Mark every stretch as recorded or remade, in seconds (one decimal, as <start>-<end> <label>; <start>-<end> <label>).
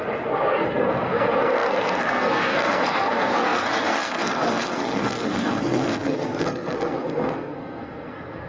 0.0-8.5 remade